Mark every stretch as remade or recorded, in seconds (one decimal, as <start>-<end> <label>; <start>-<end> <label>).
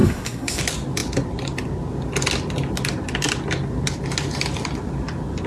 0.0-0.6 remade; 0.6-5.5 recorded